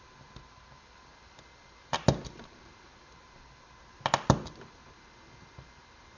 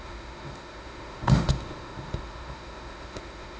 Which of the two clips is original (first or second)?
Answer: first